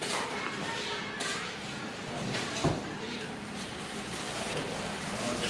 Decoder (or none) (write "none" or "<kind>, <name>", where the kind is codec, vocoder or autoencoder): vocoder, BigVGAN v2